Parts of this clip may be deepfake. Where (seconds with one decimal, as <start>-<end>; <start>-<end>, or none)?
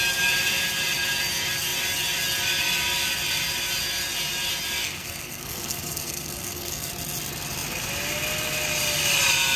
4.8-6.9